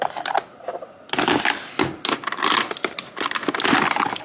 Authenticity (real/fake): real